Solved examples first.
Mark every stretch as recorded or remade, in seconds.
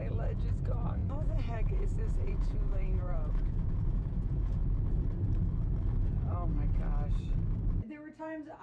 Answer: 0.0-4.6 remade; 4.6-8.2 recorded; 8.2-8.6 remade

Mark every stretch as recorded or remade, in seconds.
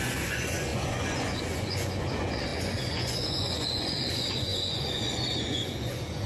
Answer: 0.0-6.3 remade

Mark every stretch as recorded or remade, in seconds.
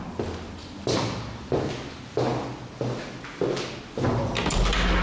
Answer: 0.0-5.0 recorded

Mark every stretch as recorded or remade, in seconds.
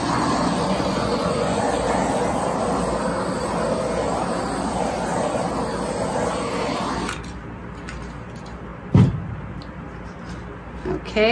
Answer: 0.0-1.6 remade; 1.6-11.3 recorded